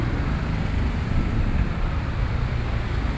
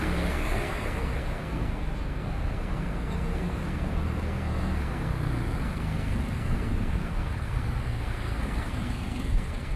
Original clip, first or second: first